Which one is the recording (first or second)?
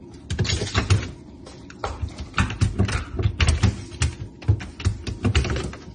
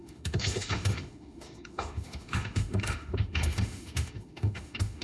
first